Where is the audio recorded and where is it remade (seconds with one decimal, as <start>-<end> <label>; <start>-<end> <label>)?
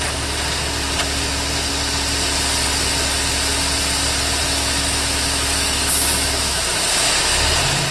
0.0-4.4 recorded; 4.4-6.6 remade; 6.6-7.9 recorded